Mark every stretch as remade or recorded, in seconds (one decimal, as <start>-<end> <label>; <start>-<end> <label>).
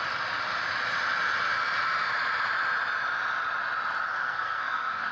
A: 0.0-4.1 recorded; 4.1-5.1 remade